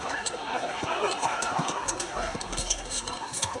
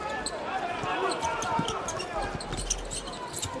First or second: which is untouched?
second